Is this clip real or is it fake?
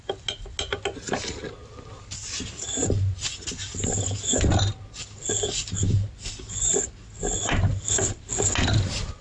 real